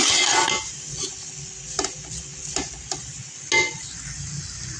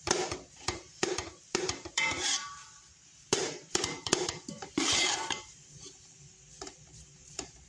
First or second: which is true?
first